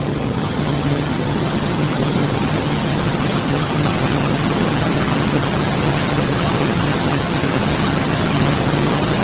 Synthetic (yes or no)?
yes